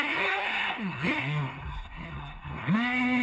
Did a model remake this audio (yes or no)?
yes